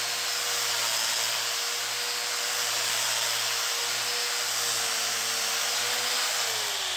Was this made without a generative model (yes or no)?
yes